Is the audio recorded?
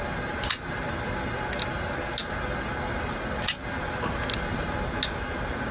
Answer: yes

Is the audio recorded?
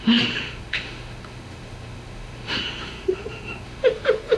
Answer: no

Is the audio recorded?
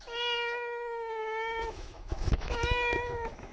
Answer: no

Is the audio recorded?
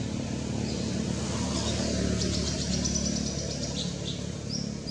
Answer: yes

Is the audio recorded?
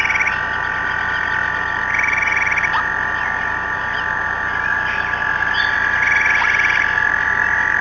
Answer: yes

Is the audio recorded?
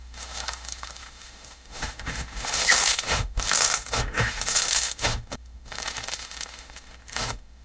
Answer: no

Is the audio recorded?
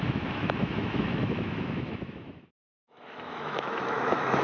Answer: no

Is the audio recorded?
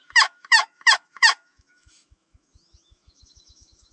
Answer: no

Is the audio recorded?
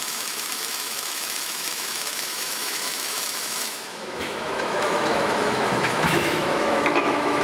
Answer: no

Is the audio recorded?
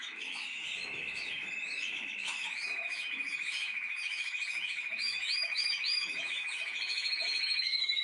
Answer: no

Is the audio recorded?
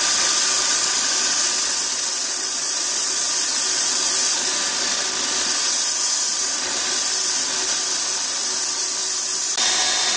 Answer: yes